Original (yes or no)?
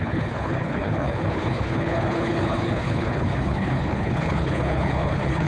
no